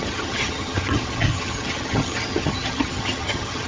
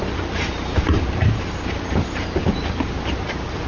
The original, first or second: second